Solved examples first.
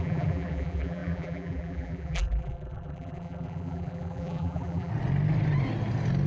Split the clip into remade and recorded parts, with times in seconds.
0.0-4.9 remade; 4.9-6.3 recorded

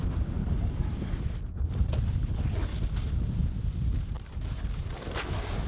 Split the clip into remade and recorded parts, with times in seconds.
0.0-0.4 recorded; 0.4-1.2 remade; 1.2-5.7 recorded

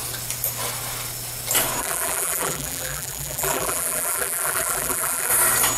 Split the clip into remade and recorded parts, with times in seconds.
0.0-1.8 recorded; 1.8-5.3 remade; 5.3-5.8 recorded

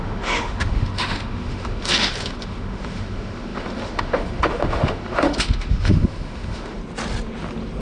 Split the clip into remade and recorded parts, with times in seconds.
0.0-6.8 remade; 6.8-7.8 recorded

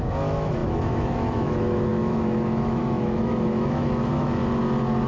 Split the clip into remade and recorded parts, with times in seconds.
0.0-4.4 remade; 4.4-5.1 recorded

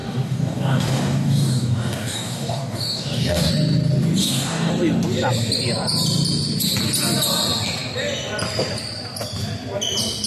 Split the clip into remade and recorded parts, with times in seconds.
0.0-3.5 remade; 3.5-4.2 recorded; 4.2-4.7 remade; 4.7-10.3 recorded

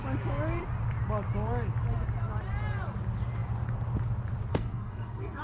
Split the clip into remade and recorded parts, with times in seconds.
0.0-4.5 recorded; 4.5-5.4 remade

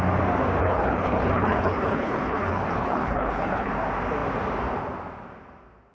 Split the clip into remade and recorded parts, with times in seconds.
0.0-0.6 recorded; 0.6-3.7 remade; 3.7-5.9 recorded